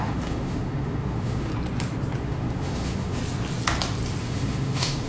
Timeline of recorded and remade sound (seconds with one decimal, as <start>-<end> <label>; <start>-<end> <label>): 0.0-1.5 remade; 1.5-2.2 recorded; 2.2-3.2 remade; 3.2-4.2 recorded; 4.2-5.1 remade